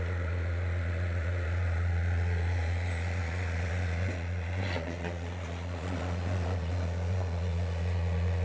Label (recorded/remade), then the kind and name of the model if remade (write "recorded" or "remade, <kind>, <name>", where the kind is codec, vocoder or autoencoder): remade, vocoder, Vocos